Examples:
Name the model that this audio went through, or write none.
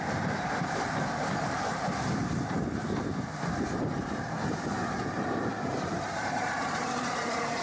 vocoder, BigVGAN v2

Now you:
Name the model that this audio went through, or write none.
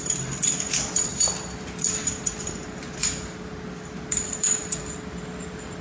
none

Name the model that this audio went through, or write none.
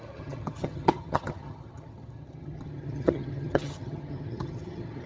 vocoder, HiFi-GAN